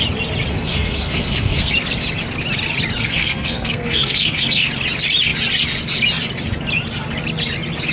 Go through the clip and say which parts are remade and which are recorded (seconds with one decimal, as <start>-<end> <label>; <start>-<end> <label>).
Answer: 0.0-0.5 recorded; 0.5-1.7 remade; 1.7-3.0 recorded; 3.0-4.7 remade; 4.7-7.9 recorded